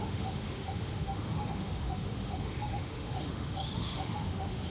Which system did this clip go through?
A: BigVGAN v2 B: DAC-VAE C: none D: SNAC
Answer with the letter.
B